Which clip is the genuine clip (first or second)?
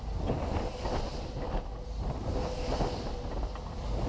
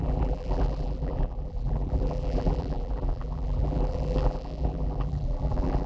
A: first